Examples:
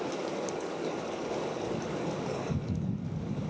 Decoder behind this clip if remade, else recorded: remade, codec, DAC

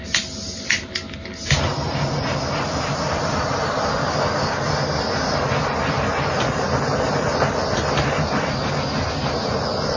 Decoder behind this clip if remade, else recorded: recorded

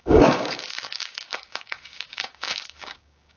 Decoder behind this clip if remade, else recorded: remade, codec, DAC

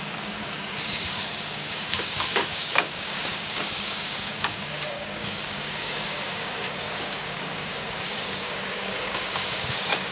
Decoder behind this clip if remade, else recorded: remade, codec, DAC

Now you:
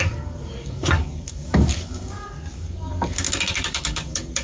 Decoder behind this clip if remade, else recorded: remade, codec, DAC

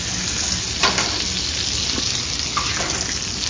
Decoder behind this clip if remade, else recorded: recorded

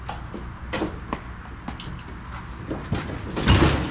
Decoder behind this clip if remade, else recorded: recorded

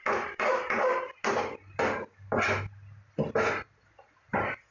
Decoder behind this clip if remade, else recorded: recorded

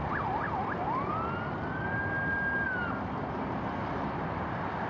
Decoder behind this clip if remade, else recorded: recorded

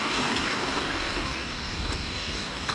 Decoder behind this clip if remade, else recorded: remade, codec, DAC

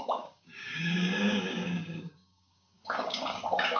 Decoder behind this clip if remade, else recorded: remade, codec, DAC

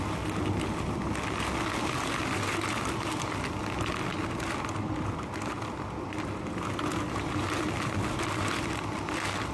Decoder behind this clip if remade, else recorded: recorded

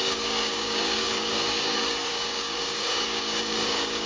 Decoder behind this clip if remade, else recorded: remade, codec, DAC